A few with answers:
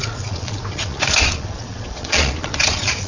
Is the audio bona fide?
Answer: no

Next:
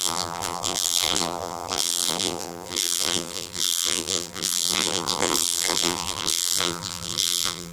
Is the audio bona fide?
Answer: no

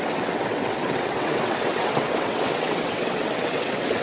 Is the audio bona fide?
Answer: no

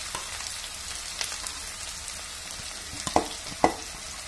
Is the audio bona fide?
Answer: yes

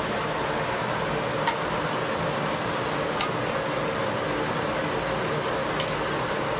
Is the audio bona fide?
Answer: yes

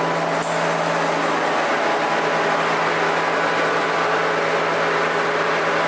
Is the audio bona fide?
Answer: yes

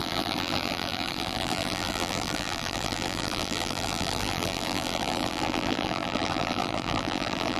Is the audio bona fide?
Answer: no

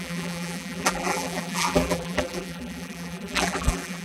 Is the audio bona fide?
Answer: no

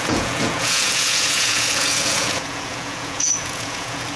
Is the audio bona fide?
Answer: no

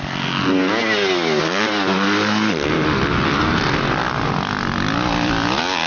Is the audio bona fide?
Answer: yes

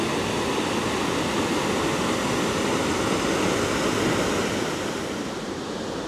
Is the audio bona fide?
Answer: yes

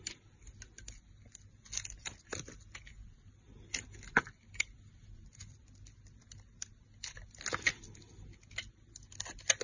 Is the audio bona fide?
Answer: yes